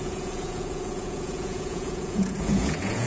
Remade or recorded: remade